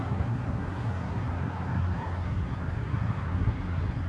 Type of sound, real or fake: fake